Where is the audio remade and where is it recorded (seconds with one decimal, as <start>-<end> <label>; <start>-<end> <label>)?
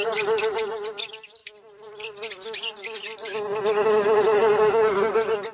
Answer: 0.0-5.5 recorded